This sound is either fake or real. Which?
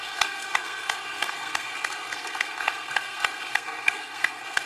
fake